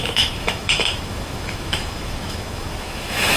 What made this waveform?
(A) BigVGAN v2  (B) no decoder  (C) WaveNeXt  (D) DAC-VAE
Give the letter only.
D